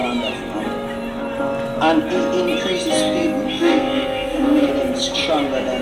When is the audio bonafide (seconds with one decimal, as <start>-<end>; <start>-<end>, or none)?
0.0-3.5; 4.7-5.8